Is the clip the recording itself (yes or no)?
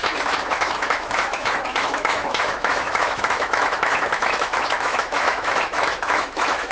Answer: no